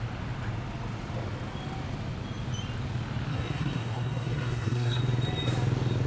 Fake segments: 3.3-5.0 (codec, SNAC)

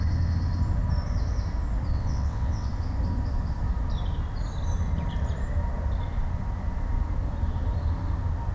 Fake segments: 1.9-2.7 (vocoder, WaveNeXt)

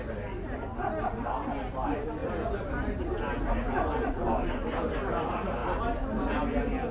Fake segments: none

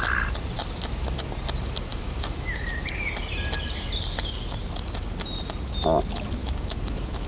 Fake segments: 1.9-2.6 (autoencoder, DAC-VAE); 6.4-7.3

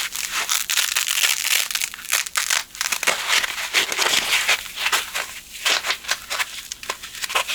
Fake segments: none

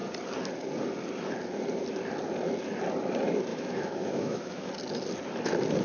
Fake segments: 3.5-4.7 (autoencoder, DAC-VAE)

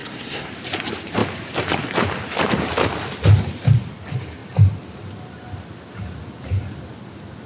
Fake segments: 0.0-0.5 (codec, SNAC)

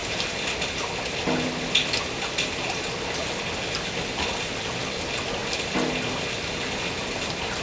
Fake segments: none